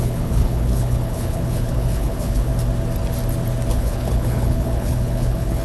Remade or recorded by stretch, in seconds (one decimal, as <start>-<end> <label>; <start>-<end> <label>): 0.0-2.5 remade; 2.5-3.7 recorded; 3.7-5.6 remade